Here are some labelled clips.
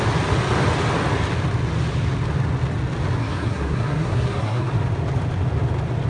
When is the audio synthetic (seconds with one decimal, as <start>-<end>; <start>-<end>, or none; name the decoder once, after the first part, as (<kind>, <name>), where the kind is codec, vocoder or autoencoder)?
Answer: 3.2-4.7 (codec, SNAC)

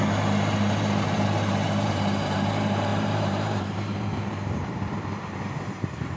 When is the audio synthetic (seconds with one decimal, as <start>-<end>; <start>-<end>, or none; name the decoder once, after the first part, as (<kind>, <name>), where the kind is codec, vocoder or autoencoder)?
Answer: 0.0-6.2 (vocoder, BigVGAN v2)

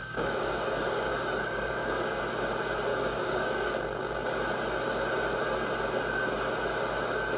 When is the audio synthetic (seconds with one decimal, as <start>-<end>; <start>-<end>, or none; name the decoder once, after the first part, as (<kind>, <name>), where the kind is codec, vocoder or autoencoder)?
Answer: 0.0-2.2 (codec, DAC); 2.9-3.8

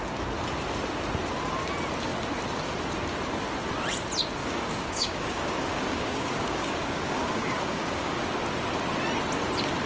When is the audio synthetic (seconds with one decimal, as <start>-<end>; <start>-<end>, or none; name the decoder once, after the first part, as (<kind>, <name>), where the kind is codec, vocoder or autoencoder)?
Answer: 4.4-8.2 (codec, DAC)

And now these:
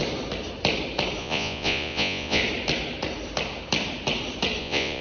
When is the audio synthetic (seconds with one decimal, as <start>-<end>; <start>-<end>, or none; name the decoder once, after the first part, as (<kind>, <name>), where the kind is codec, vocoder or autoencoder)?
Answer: 1.2-2.4 (vocoder, Vocos); 4.6-5.0

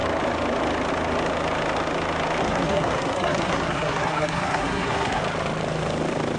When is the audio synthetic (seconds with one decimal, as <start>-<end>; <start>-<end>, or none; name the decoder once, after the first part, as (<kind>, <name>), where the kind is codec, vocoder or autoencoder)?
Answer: 2.4-5.2 (codec, SNAC)

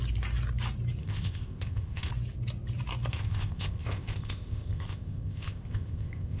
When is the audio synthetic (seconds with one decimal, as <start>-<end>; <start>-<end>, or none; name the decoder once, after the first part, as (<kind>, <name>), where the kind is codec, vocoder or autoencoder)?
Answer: 1.0-2.1 (codec, ZipCodec); 3.1-6.4

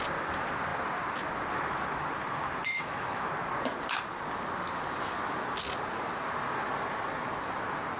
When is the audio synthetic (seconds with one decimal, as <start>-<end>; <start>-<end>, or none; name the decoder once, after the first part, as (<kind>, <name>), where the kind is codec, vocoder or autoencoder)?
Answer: 2.6-3.3 (autoencoder, DAC-VAE)